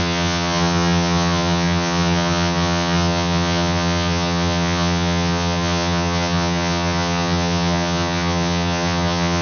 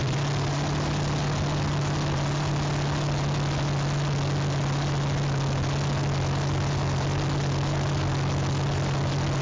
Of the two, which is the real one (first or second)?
second